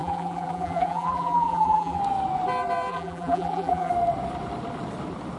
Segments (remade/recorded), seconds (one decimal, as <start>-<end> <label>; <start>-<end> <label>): 0.0-2.0 remade; 2.0-2.9 recorded; 2.9-3.9 remade; 3.9-5.4 recorded